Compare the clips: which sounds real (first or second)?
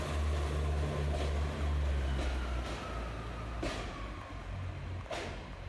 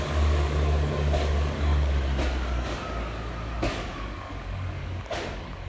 first